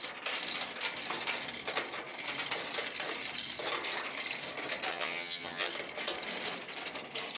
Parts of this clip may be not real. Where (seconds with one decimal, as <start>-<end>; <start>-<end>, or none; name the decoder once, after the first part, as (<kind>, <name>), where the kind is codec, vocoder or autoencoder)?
4.9-5.7 (vocoder, HiFi-GAN)